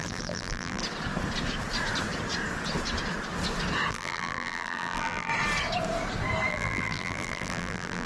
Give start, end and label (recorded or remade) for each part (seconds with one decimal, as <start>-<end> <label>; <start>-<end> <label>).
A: 0.0-0.8 remade; 0.8-3.9 recorded; 3.9-5.3 remade; 5.3-6.5 recorded; 6.5-8.1 remade